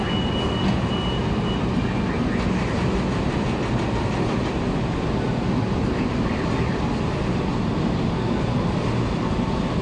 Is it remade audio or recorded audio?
recorded